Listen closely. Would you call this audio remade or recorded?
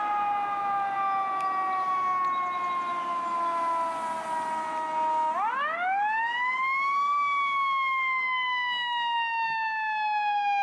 recorded